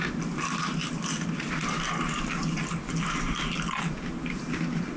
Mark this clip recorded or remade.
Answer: recorded